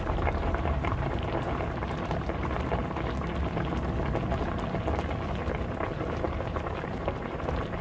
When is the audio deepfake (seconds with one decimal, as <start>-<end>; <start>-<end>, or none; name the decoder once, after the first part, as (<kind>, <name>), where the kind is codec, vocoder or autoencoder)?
0.0-2.8 (vocoder, BigVGAN v2); 6.0-7.8